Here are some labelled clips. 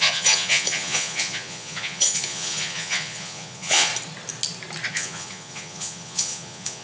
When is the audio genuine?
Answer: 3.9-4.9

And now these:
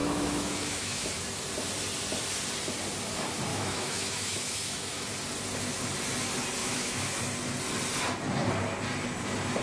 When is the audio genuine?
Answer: 1.1-3.5; 5.1-6.6; 7.2-9.6

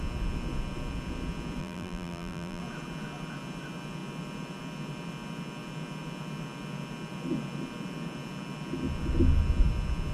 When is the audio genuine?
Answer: 0.0-1.6; 2.6-10.1